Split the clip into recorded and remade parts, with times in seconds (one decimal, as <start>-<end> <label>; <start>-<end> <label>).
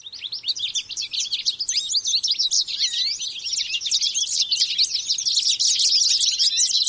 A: 0.0-6.9 recorded